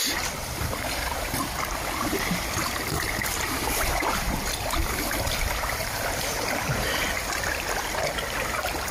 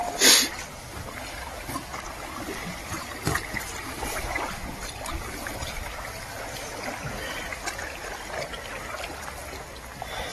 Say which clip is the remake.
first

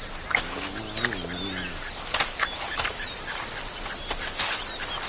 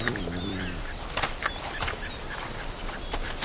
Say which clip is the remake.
second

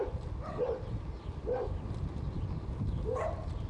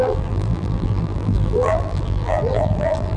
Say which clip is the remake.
second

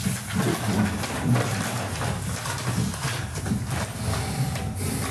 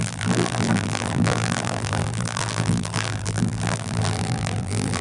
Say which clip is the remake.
second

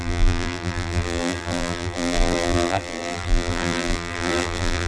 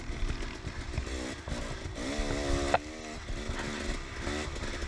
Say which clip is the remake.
first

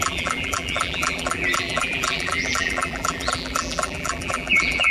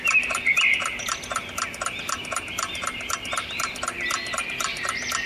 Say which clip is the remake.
first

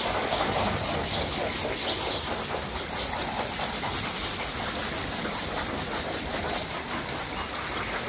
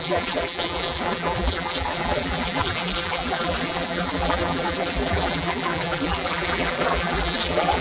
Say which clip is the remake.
second